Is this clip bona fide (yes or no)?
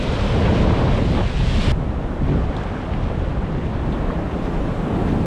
yes